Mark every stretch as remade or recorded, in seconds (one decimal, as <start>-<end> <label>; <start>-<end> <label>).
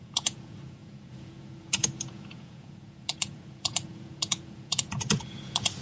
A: 0.0-5.8 remade